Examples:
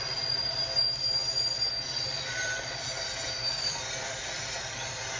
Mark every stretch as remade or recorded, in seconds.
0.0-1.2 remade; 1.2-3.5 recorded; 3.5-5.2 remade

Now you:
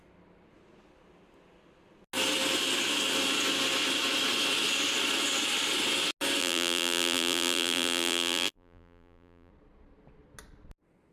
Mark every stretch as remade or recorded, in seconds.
0.0-6.4 recorded; 6.4-9.5 remade; 9.5-11.1 recorded

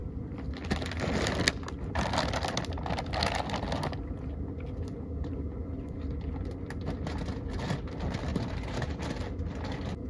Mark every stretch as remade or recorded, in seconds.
0.0-8.3 recorded; 8.3-9.0 remade; 9.0-10.1 recorded